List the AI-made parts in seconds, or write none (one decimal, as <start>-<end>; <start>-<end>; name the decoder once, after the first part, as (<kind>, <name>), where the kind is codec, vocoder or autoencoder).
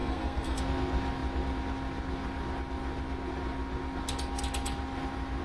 0.0-0.6 (codec, SNAC)